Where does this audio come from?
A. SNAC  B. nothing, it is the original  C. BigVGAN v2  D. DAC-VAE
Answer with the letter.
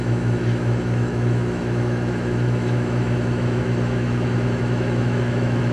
D